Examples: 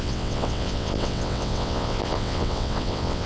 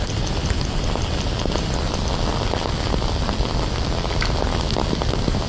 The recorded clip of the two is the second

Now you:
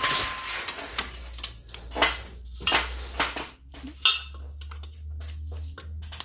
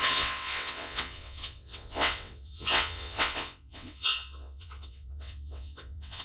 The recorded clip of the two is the first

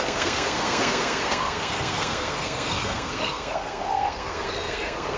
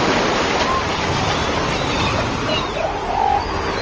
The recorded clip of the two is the second